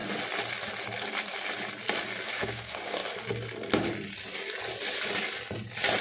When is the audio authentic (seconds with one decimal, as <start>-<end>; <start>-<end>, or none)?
0.0-2.3; 3.0-6.0